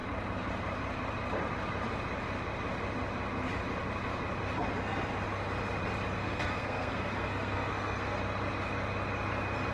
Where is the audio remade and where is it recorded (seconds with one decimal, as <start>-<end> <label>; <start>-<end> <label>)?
0.0-6.2 recorded; 6.2-8.2 remade; 8.2-9.7 recorded